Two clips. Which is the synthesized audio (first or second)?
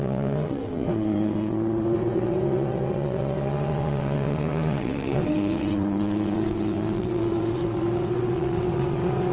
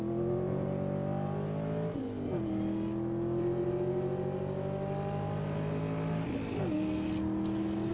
first